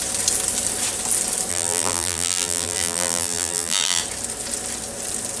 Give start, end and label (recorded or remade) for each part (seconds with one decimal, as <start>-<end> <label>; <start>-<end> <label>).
0.0-1.5 recorded; 1.5-4.0 remade; 4.0-5.4 recorded